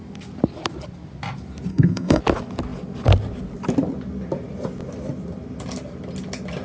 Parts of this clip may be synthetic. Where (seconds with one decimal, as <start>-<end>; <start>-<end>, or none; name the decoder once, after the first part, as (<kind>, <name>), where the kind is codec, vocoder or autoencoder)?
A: 1.7-2.2 (codec, SNAC)